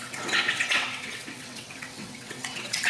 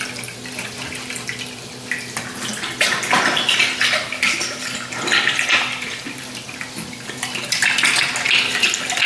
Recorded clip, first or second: second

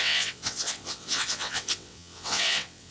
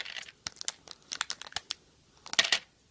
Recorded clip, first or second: second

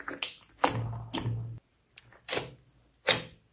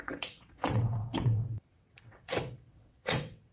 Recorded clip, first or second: first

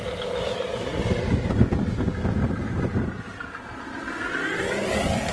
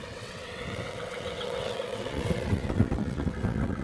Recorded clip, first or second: first